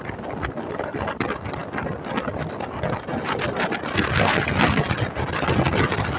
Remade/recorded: recorded